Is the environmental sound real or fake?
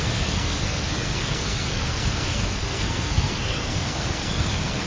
fake